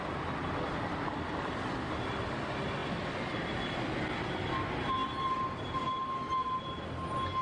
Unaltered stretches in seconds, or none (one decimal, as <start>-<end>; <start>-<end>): 0.0-7.4